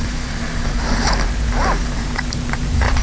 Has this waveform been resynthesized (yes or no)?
yes